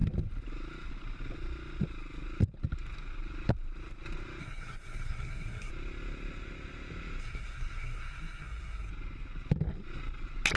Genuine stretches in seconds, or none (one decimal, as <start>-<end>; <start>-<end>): 0.0-4.4; 5.7-7.2; 8.9-10.6